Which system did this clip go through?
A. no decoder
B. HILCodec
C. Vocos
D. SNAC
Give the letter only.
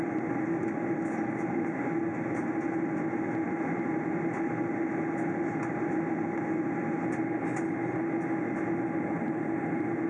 A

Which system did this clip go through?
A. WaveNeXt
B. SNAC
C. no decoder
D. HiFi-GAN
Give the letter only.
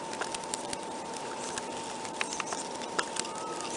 C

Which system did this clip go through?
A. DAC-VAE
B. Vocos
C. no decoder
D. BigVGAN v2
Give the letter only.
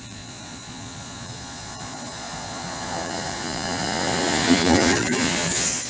B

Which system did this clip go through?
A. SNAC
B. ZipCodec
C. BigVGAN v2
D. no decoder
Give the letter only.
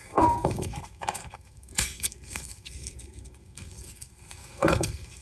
A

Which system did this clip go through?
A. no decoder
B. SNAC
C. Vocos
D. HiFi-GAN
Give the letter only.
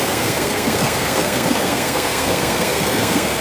B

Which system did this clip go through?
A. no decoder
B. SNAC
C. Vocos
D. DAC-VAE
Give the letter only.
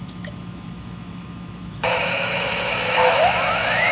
D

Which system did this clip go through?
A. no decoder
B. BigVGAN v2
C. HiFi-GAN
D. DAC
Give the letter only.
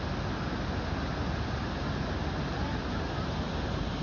A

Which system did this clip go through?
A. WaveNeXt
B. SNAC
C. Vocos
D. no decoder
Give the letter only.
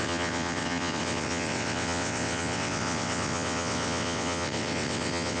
A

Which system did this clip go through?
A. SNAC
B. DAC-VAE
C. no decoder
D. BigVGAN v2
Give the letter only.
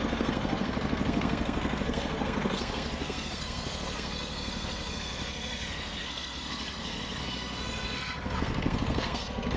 A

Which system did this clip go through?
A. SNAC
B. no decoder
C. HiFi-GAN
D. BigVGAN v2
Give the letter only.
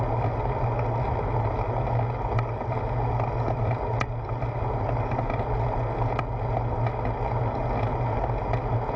B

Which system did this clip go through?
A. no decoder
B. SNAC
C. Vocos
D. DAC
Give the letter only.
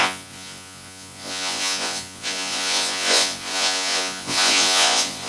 C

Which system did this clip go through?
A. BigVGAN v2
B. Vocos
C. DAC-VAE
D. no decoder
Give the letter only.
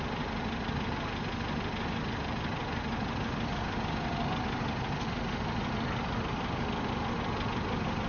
D